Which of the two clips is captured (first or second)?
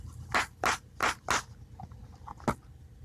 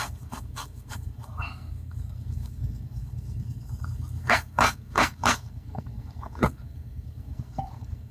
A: first